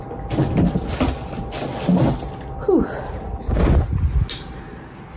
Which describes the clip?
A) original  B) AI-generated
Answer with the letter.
A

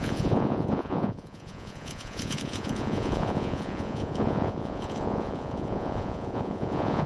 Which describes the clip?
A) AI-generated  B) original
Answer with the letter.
A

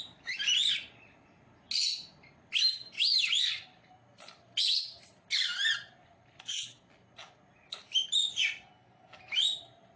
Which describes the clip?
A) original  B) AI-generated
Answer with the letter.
A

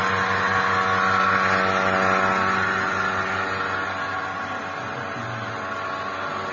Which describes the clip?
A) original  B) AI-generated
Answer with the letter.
A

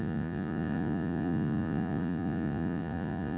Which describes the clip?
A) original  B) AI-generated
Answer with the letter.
B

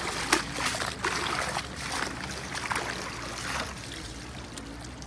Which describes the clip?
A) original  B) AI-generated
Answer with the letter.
A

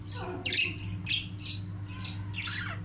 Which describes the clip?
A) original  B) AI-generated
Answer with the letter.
A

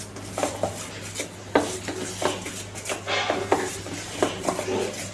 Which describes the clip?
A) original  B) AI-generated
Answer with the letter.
A